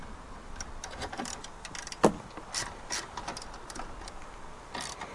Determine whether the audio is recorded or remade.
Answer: recorded